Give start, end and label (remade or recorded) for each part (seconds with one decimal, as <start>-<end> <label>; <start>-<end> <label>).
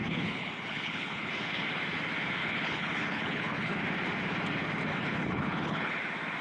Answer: 0.0-1.3 remade; 1.3-2.4 recorded; 2.4-3.8 remade; 3.8-4.9 recorded; 4.9-6.0 remade; 6.0-6.4 recorded